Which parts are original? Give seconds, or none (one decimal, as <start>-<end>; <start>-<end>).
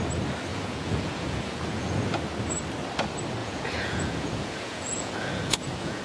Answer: 0.0-0.5; 2.1-3.4